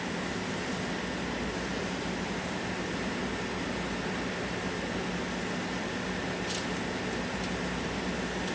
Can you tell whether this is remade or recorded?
recorded